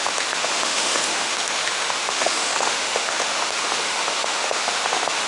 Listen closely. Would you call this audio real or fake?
fake